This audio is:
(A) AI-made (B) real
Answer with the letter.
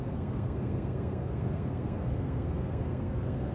A